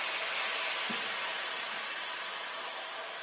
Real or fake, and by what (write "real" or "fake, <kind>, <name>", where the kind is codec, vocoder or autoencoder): real